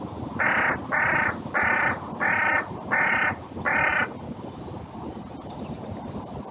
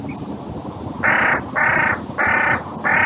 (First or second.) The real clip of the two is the second